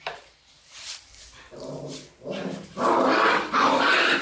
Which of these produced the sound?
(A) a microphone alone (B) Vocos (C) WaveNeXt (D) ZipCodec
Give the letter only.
A